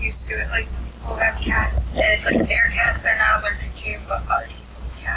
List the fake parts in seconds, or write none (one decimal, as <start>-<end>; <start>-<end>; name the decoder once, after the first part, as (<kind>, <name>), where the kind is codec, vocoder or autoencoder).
3.9-4.4 (vocoder, Vocos)